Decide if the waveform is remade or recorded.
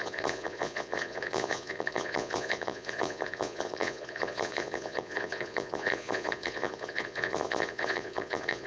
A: remade